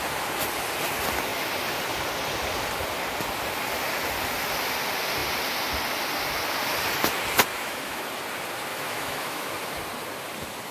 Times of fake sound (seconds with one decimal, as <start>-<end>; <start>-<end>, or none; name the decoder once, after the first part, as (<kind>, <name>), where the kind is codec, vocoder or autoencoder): 7.5-8.0 (autoencoder, DAC-VAE); 8.7-9.5